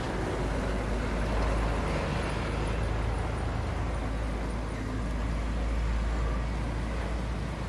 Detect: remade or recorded recorded